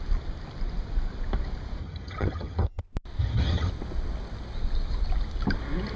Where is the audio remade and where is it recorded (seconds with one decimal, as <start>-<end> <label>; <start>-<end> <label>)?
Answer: 0.0-1.8 recorded; 1.8-2.8 remade; 2.8-3.2 recorded; 3.2-3.7 remade; 3.7-6.0 recorded

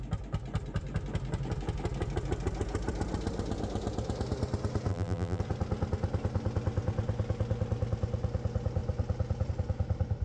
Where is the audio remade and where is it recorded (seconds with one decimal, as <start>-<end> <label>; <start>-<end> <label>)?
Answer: 0.0-4.9 recorded; 4.9-5.4 remade; 5.4-10.2 recorded

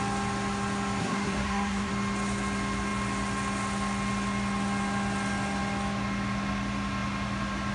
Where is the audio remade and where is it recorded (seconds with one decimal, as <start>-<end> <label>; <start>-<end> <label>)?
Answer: 0.0-1.0 recorded; 1.0-1.9 remade; 1.9-7.7 recorded

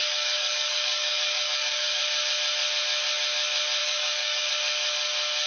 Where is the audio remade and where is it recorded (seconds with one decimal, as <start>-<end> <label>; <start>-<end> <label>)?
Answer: 0.0-2.0 remade; 2.0-3.8 recorded; 3.8-4.5 remade; 4.5-5.5 recorded

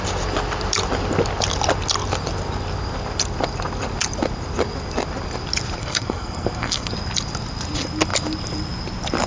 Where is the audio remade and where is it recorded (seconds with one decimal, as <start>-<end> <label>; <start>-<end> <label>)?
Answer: 0.0-5.8 recorded; 5.8-6.9 remade; 6.9-9.3 recorded

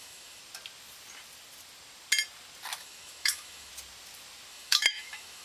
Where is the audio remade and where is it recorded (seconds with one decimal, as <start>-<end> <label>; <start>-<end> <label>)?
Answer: 0.0-0.4 remade; 0.4-2.8 recorded; 2.8-3.7 remade; 3.7-4.5 recorded; 4.5-5.4 remade

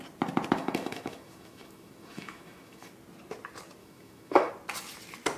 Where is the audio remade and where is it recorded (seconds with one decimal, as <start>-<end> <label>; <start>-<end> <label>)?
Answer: 0.0-0.6 recorded; 0.6-2.9 remade; 2.9-3.8 recorded; 3.8-4.5 remade; 4.5-5.4 recorded